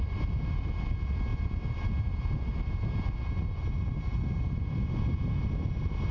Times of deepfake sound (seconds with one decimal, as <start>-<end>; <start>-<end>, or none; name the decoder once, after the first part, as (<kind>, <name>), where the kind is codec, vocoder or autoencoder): none